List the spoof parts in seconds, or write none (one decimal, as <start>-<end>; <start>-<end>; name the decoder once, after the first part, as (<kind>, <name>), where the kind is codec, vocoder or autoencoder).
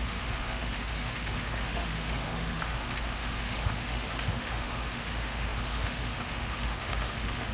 0.0-7.5 (autoencoder, DAC-VAE)